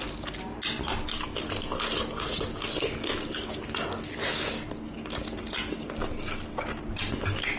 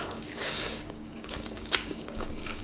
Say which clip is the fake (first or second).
second